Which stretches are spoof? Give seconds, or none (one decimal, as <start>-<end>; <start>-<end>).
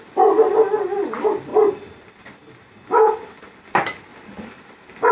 none